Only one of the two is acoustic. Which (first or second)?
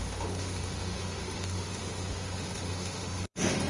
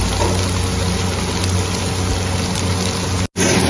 second